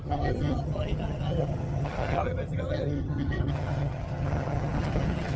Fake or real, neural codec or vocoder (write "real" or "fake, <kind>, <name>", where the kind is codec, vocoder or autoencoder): fake, vocoder, HiFi-GAN